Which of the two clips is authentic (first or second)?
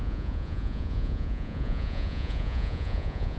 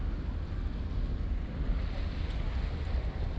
second